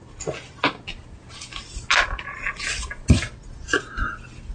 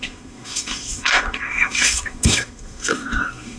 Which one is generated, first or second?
second